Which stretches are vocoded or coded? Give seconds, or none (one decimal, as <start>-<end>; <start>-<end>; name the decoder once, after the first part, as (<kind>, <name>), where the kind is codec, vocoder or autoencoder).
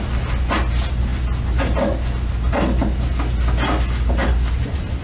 none